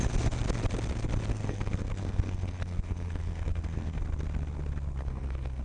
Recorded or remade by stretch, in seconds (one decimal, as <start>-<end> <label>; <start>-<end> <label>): 0.0-1.3 recorded; 1.3-4.0 remade; 4.0-5.0 recorded; 5.0-5.6 remade